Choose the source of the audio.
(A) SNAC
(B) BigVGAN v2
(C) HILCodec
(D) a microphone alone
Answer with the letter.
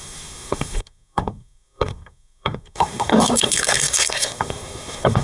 A